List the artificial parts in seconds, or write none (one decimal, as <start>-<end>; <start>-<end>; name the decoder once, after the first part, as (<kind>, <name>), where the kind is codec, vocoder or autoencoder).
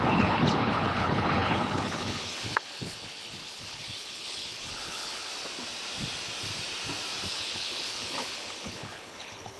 0.0-5.3 (codec, HILCodec); 7.3-9.6